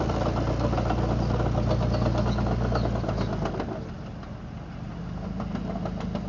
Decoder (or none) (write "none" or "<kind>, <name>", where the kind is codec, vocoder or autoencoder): none